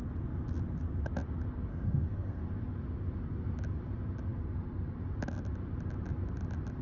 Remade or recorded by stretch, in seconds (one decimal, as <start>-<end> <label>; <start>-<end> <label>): 0.0-1.7 recorded; 1.7-2.4 remade; 2.4-6.8 recorded